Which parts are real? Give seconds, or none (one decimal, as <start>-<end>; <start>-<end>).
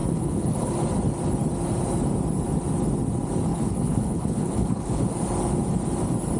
0.7-3.5; 5.0-6.4